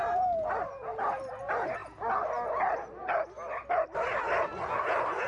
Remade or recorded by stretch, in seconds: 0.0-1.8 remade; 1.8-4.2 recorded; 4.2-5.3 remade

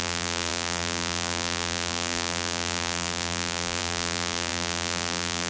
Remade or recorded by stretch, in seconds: 0.0-5.5 remade

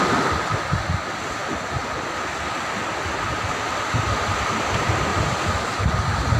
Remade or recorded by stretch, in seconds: 0.0-5.1 recorded; 5.1-5.8 remade; 5.8-6.4 recorded

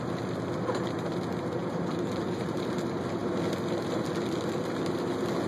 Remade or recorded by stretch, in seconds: 0.0-1.6 recorded; 1.6-2.6 remade; 2.6-5.5 recorded

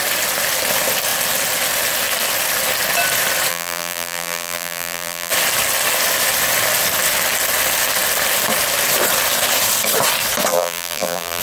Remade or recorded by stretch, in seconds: 0.0-3.5 recorded; 3.5-5.3 remade; 5.3-10.5 recorded; 10.5-11.4 remade